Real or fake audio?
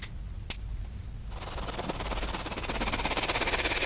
real